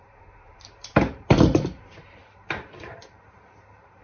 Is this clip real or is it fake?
fake